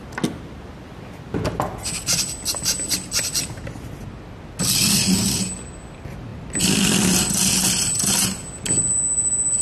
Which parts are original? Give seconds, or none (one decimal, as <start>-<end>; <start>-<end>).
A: 0.0-9.6